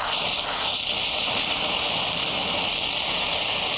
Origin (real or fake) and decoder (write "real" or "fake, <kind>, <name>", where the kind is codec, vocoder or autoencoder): real